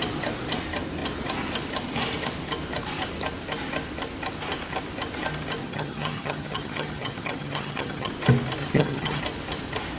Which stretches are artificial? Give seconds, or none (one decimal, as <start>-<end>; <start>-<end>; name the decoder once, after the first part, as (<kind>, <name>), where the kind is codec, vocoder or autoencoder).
5.6-8.1 (vocoder, HiFi-GAN); 8.6-9.2

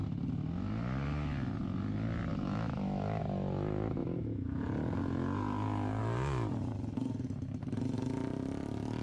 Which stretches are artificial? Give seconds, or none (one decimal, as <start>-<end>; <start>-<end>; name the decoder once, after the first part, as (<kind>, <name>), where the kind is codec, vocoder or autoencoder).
2.3-3.2 (autoencoder, DAC-VAE); 4.0-4.6